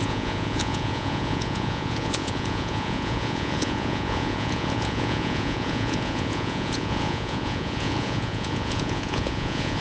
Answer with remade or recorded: remade